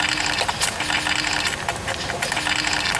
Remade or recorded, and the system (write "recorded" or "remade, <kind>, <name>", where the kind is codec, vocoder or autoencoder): recorded